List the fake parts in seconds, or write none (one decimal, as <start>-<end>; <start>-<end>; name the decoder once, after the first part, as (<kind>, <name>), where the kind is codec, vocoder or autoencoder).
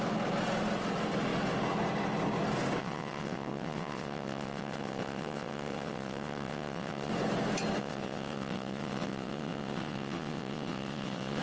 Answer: 2.8-7.1 (vocoder, WaveNeXt); 7.8-11.4